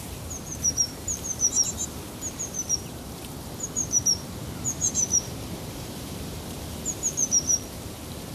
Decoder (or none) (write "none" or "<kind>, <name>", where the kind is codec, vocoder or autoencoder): vocoder, BigVGAN v2